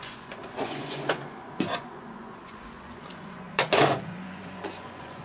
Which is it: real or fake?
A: fake